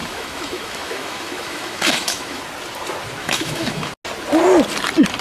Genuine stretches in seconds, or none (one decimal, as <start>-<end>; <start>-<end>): 2.4-3.2; 3.9-5.2